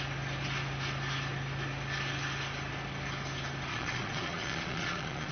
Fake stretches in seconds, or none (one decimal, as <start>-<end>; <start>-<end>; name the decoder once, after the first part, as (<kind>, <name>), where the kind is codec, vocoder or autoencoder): 3.7-5.3 (vocoder, Vocos)